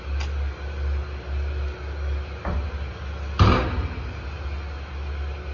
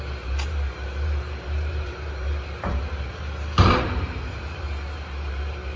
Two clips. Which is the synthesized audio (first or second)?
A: second